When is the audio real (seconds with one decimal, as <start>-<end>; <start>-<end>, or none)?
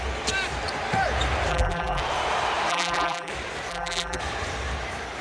0.0-1.5; 2.0-2.7; 3.3-3.7; 4.2-5.2